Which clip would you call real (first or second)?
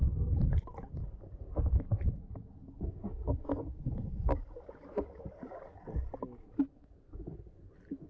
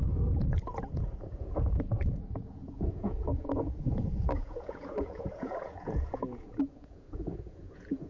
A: first